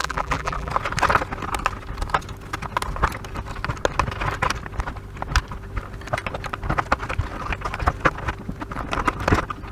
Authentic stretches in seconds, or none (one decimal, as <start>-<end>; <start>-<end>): 0.7-9.7